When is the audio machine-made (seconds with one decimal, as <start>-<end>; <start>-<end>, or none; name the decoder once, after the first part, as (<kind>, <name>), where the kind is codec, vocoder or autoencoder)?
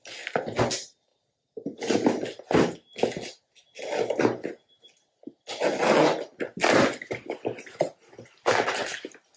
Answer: none